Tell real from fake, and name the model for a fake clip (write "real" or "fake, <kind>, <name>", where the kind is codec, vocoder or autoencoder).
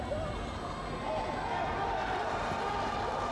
real